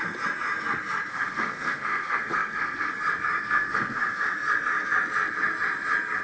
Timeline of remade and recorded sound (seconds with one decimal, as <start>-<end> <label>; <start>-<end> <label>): 0.0-1.1 recorded; 1.1-2.9 remade; 2.9-3.4 recorded; 3.4-4.0 remade; 4.0-6.2 recorded